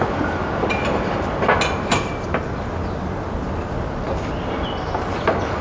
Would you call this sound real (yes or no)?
yes